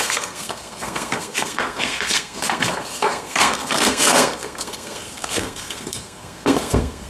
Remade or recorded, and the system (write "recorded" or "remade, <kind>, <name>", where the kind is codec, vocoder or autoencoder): remade, codec, SNAC